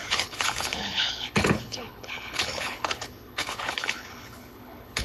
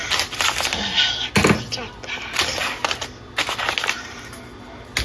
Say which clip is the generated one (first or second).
first